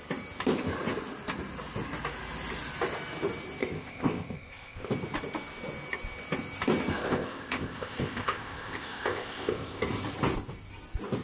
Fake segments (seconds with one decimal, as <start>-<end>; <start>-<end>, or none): 3.6-4.9; 7.0-9.8